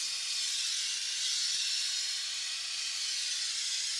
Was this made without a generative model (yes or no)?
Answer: yes